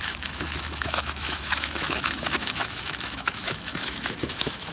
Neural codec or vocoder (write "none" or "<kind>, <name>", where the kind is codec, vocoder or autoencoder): autoencoder, DAC-VAE